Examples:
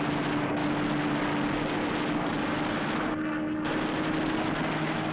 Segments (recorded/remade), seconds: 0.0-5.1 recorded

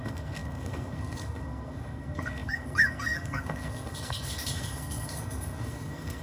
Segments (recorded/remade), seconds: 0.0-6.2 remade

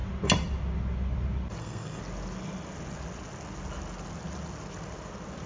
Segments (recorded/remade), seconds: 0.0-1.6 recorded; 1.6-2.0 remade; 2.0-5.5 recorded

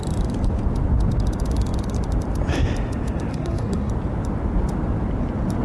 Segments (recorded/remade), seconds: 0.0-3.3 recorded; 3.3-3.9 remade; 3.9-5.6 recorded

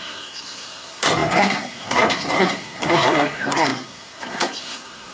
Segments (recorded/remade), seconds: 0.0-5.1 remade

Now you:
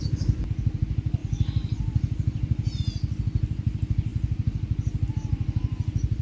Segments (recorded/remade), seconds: 0.0-6.2 recorded

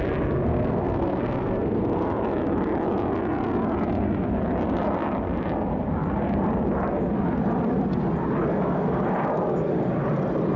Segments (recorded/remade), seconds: 0.0-0.5 recorded; 0.5-1.8 remade; 1.8-10.6 recorded